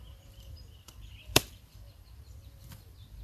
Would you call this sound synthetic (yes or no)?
yes